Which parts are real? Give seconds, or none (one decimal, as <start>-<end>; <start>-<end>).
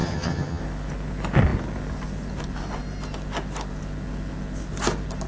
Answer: 0.6-5.3